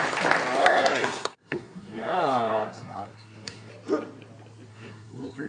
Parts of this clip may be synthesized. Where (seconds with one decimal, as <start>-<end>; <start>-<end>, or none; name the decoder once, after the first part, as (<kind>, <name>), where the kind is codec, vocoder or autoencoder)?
0.6-3.7 (codec, SNAC); 4.7-5.5